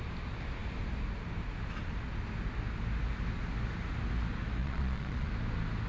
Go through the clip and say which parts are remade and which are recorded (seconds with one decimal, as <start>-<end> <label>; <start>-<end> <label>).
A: 0.0-4.6 recorded; 4.6-5.3 remade; 5.3-5.9 recorded